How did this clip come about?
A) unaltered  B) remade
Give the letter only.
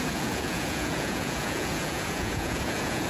B